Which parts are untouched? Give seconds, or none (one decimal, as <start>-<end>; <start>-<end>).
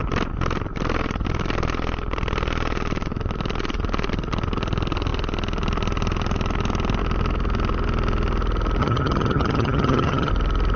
0.0-8.8; 10.3-10.8